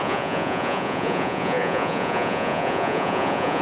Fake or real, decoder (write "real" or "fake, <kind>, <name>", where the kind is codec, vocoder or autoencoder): fake, vocoder, Vocos